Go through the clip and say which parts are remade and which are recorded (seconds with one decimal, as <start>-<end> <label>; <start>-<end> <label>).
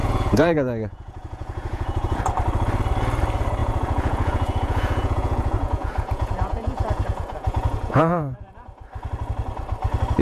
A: 0.0-2.2 remade; 2.2-3.6 recorded; 3.6-8.5 remade; 8.5-10.2 recorded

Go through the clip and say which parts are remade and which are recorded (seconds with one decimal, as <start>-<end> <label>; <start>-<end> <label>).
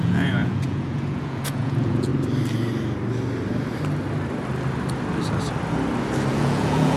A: 0.0-2.1 remade; 2.1-6.3 recorded; 6.3-7.0 remade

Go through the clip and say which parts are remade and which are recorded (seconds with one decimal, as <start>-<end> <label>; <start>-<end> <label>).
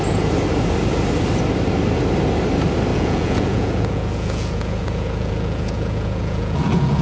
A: 0.0-2.9 recorded; 2.9-7.0 remade